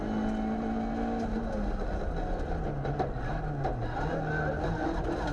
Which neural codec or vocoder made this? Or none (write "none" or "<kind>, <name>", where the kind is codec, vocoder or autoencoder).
none